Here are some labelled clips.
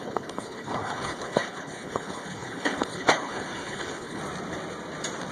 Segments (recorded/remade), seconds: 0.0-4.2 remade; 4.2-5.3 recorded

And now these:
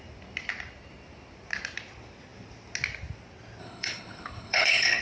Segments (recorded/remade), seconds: 0.0-3.6 recorded; 3.6-5.0 remade

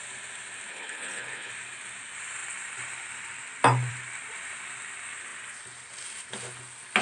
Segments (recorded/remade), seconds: 0.0-0.7 recorded; 0.7-1.5 remade; 1.5-7.0 recorded

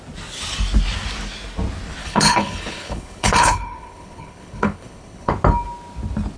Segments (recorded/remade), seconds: 0.0-2.0 recorded; 2.0-5.3 remade; 5.3-6.4 recorded